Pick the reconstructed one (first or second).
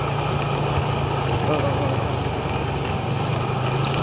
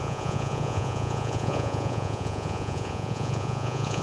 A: second